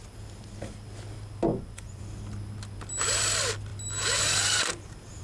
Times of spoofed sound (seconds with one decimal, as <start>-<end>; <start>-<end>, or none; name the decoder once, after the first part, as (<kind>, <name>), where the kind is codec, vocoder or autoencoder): 1.5-2.0 (vocoder, Vocos)